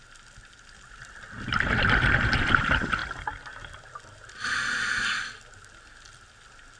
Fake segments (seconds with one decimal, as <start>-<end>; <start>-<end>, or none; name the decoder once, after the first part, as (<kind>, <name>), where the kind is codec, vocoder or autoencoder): none